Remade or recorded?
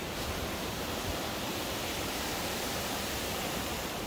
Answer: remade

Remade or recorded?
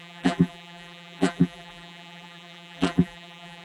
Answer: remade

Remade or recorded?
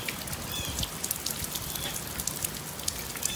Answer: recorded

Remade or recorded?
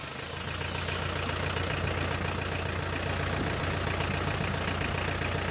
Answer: recorded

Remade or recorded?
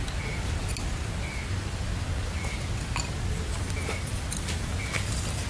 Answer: recorded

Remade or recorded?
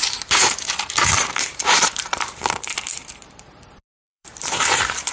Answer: remade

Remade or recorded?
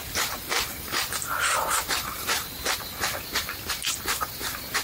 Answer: remade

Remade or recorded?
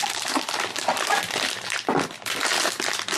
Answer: recorded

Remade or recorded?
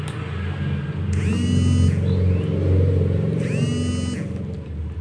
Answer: recorded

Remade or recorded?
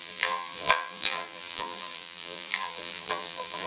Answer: remade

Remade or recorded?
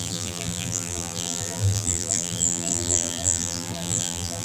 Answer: remade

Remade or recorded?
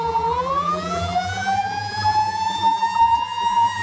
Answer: remade